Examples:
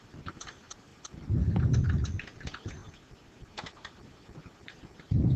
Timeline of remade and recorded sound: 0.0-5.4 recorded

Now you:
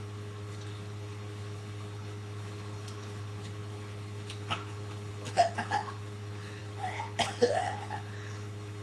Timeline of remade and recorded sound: 0.0-8.8 remade

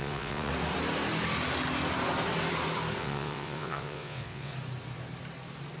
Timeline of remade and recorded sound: 0.0-0.5 remade; 0.5-3.0 recorded; 3.0-4.5 remade; 4.5-5.8 recorded

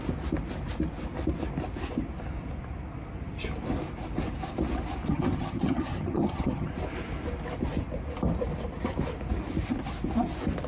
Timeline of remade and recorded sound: 0.0-5.1 recorded; 5.1-6.7 remade; 6.7-10.7 recorded

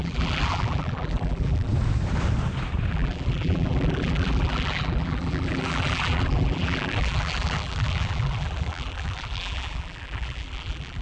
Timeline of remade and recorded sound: 0.0-1.7 remade; 1.7-2.9 recorded; 2.9-11.0 remade

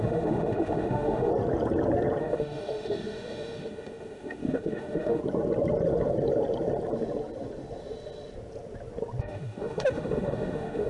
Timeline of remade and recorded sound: 0.0-1.3 remade; 1.3-2.2 recorded; 2.2-5.2 remade; 5.2-9.2 recorded; 9.2-10.9 remade

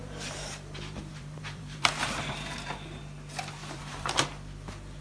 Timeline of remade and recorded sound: 0.0-3.0 remade; 3.0-3.6 recorded; 3.6-4.1 remade; 4.1-5.0 recorded

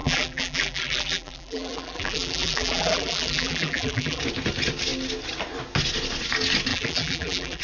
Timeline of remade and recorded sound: 0.0-4.2 remade; 4.2-6.7 recorded; 6.7-7.6 remade